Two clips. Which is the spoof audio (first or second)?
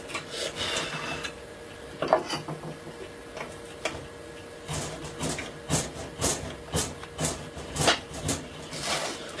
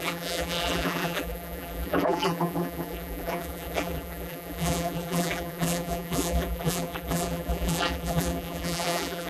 second